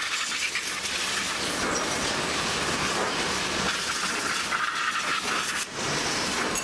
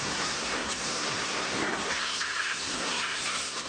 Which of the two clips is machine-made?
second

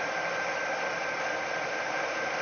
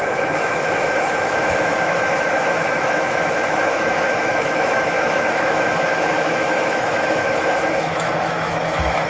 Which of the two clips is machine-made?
second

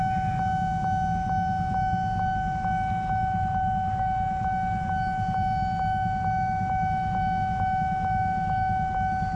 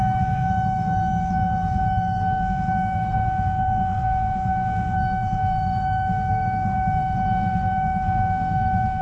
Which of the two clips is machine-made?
second